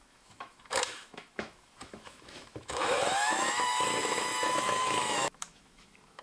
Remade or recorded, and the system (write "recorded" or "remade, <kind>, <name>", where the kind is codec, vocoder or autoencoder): remade, autoencoder, DAC-VAE